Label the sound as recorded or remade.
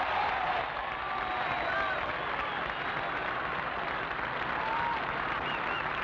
recorded